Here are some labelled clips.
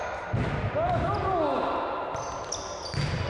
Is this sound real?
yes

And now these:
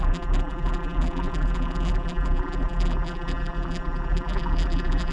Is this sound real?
no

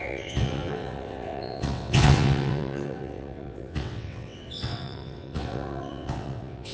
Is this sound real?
no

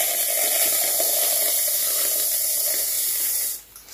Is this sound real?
yes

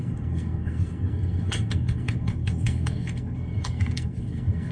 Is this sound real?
no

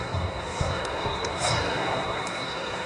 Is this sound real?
no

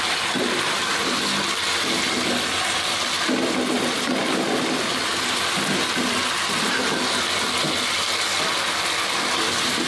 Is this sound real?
yes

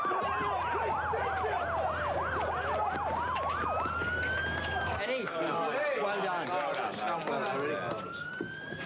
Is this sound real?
yes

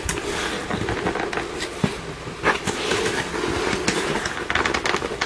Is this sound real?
yes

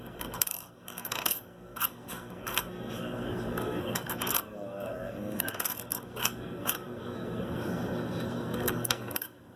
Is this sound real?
no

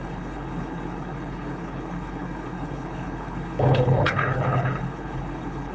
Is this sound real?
no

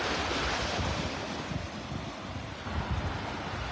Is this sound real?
yes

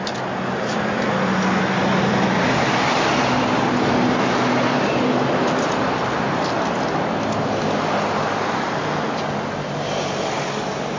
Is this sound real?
yes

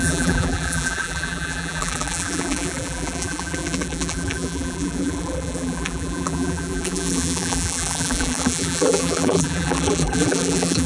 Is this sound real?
no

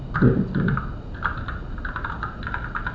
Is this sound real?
yes